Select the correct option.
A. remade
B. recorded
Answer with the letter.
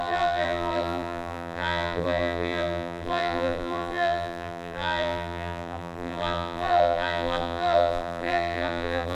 A